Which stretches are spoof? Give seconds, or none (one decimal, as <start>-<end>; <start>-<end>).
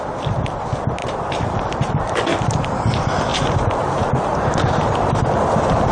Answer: 1.0-1.9; 3.3-5.2